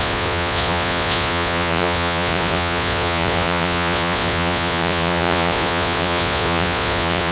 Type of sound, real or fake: fake